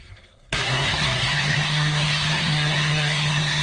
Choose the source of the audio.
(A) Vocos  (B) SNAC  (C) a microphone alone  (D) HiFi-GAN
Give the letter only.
B